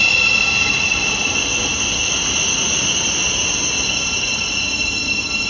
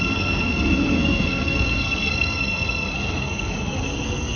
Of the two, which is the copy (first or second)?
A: second